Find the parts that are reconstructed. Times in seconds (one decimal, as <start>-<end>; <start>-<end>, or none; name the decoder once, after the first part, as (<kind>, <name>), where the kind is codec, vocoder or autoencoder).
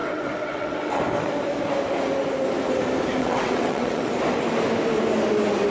0.0-1.0 (vocoder, WaveNeXt); 3.2-4.1